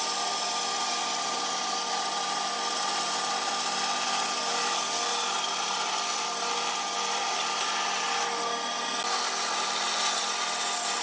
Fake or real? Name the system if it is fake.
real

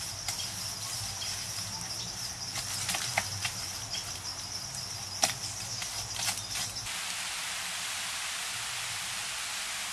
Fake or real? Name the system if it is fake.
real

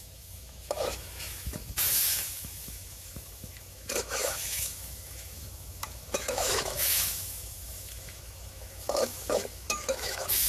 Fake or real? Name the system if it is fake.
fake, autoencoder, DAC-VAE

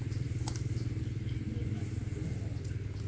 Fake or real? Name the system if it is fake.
real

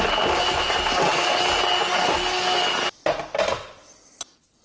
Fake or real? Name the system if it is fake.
real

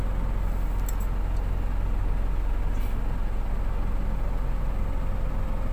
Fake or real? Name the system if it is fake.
real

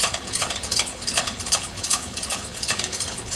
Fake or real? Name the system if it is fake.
fake, codec, HILCodec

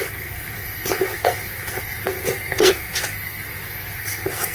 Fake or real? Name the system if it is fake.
fake, codec, SNAC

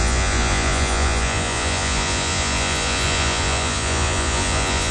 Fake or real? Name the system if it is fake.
fake, vocoder, Vocos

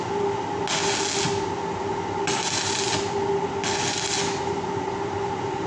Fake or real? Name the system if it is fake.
real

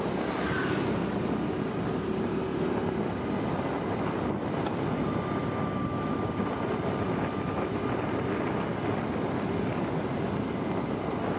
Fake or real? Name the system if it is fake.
real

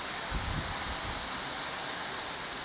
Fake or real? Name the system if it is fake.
real